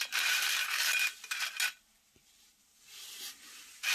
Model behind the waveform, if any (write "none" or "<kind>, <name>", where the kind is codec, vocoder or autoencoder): none